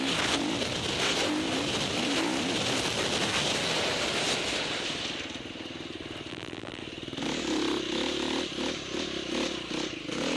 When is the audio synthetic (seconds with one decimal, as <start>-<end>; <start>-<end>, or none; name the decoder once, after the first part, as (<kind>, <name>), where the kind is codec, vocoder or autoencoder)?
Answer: 6.3-6.8 (vocoder, BigVGAN v2)